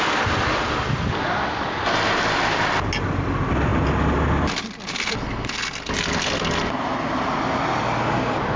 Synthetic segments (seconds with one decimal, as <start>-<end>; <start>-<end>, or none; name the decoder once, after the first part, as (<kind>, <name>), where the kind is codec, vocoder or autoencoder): none